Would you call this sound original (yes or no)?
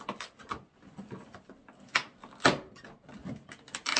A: yes